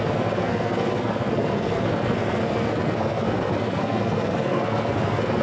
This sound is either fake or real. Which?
fake